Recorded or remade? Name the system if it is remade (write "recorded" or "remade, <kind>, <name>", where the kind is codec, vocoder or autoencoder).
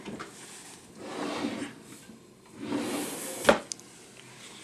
recorded